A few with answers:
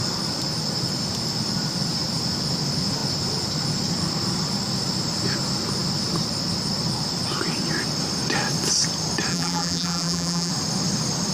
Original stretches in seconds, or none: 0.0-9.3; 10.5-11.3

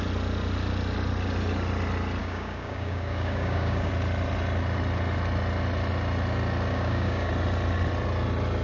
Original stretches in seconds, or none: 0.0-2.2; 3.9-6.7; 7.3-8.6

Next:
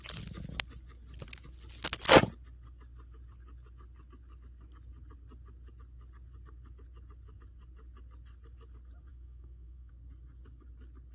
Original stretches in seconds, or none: 0.0-9.1; 9.9-11.1

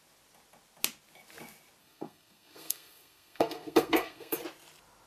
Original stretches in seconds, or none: 0.0-1.8; 4.4-5.1

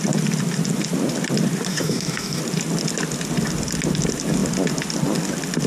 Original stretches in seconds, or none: 0.0-1.7; 2.4-5.7

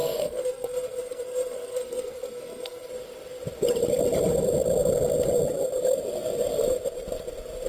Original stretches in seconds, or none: 2.9-7.7

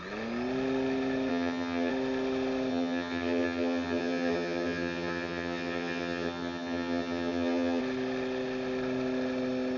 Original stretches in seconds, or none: 0.0-1.3; 1.9-2.7; 7.8-9.8